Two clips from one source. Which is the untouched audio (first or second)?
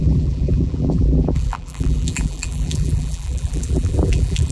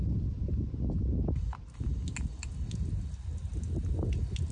second